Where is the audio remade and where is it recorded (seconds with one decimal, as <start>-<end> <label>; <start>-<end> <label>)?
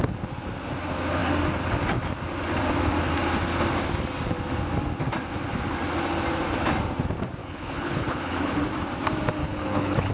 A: 0.0-7.4 recorded; 7.4-8.6 remade; 8.6-9.4 recorded; 9.4-10.1 remade